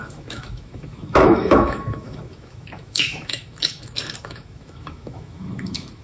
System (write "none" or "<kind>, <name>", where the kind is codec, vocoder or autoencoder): autoencoder, DAC-VAE